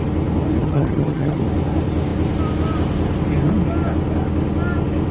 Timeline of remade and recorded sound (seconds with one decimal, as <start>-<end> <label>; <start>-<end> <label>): 0.0-0.6 recorded; 0.6-1.4 remade; 1.4-5.1 recorded